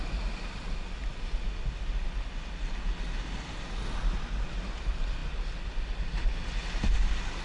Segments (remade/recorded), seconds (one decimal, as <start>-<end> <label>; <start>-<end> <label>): 0.0-7.4 recorded